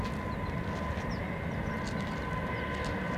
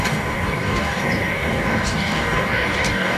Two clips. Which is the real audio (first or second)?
first